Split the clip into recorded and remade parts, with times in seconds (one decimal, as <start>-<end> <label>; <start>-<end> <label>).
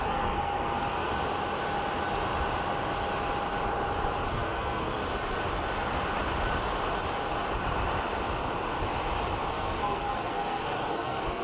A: 0.0-1.1 remade; 1.1-4.3 recorded; 4.3-5.0 remade; 5.0-9.5 recorded; 9.5-11.4 remade